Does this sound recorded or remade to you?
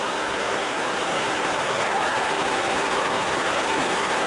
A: remade